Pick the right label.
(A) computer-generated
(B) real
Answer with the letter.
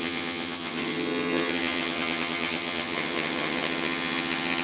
A